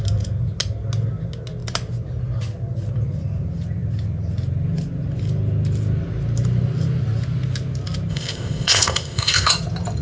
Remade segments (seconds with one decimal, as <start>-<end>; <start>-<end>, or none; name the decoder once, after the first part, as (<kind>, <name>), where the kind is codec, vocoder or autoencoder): 8.1-9.5 (codec, ZipCodec)